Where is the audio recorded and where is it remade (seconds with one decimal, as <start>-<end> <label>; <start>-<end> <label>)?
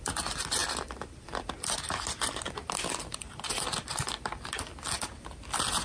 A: 0.0-5.8 recorded